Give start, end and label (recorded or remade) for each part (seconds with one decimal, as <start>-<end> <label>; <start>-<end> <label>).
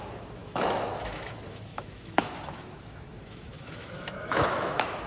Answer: 0.0-5.1 remade